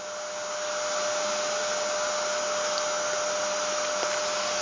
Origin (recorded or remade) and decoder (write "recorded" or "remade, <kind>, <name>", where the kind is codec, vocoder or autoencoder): recorded